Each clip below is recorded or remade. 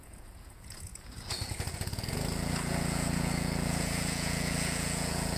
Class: remade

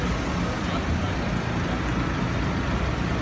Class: recorded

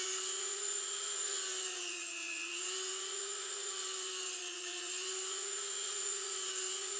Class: remade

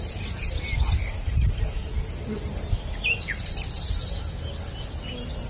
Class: recorded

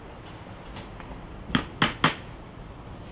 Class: recorded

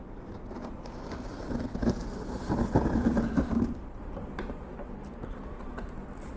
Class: recorded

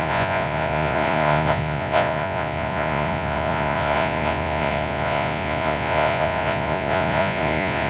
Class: remade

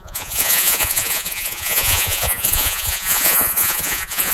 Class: remade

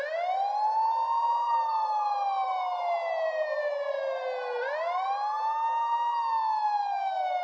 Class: recorded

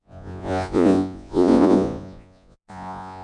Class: remade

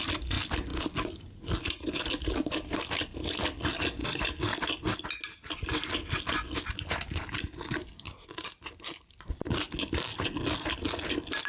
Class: recorded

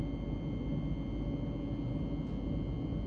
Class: recorded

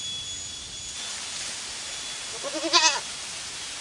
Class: recorded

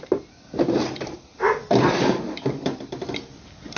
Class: recorded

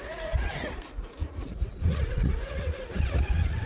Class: remade